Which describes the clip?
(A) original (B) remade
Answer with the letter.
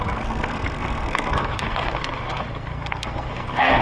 B